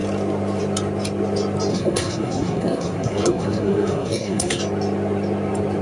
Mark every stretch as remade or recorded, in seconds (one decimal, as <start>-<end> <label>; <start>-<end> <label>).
0.0-1.7 recorded; 1.7-4.6 remade; 4.6-5.8 recorded